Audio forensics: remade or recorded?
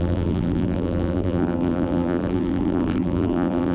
remade